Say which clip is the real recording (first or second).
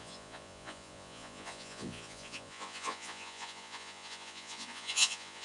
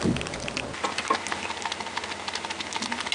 second